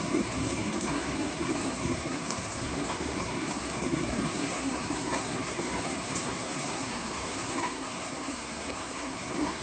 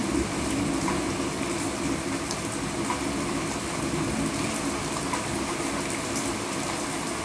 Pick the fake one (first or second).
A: first